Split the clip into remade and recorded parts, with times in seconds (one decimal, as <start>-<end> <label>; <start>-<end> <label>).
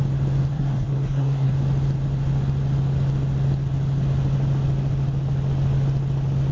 0.0-0.5 recorded; 0.5-1.5 remade; 1.5-6.5 recorded